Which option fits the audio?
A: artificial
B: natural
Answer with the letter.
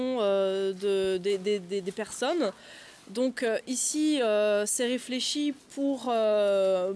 B